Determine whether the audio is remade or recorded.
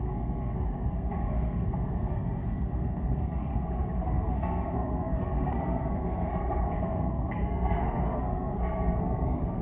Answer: remade